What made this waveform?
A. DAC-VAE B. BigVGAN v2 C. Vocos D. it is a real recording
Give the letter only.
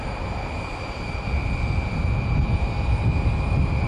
D